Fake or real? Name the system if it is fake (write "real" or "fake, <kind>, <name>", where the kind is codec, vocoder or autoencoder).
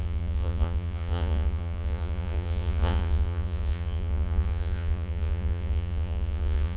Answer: fake, vocoder, Vocos